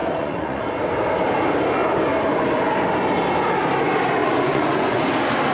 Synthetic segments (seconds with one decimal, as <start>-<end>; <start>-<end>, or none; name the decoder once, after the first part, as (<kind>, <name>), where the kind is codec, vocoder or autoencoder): 0.0-0.6 (vocoder, Vocos); 4.2-5.0